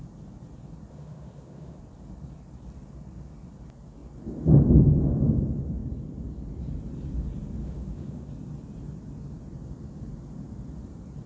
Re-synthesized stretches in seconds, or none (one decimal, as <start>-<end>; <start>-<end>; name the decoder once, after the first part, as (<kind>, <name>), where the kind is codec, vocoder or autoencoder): 0.9-1.8 (autoencoder, DAC-VAE); 7.6-8.3